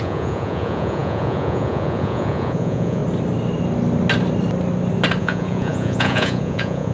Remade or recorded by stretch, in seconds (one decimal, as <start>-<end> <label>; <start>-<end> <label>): 0.0-3.0 remade; 3.0-5.2 recorded; 5.2-6.9 remade